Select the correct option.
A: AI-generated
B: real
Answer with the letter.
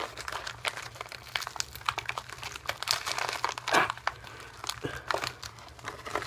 B